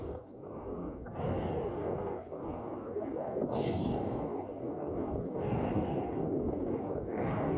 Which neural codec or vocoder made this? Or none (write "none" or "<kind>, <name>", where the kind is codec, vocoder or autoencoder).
codec, DAC